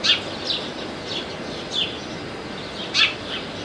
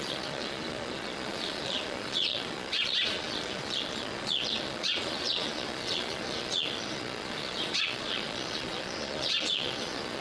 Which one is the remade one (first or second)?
second